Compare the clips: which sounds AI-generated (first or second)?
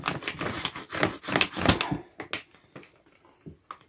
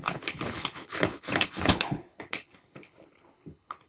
second